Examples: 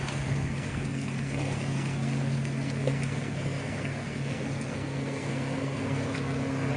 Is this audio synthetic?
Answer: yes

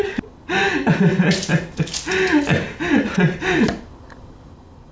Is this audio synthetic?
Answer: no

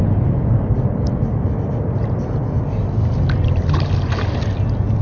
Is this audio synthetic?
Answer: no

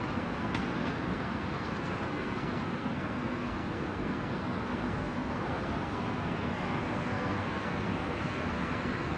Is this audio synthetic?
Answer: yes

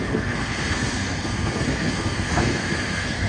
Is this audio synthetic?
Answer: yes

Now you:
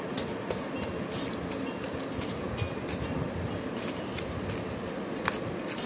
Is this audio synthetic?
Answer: no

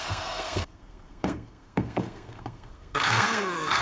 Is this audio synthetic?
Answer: yes